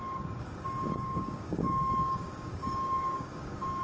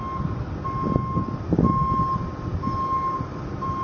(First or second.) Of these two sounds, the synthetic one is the first